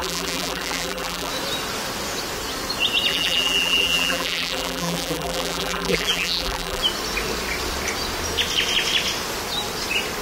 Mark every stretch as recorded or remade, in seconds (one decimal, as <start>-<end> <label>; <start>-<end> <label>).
0.0-1.3 remade; 1.3-3.1 recorded; 3.1-6.8 remade; 6.8-10.2 recorded